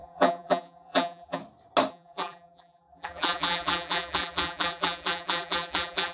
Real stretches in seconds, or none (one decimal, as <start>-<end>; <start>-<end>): 1.4-1.9